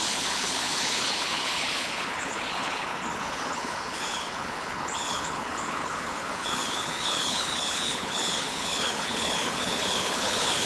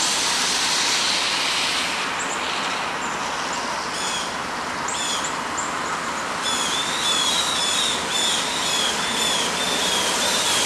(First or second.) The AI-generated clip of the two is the first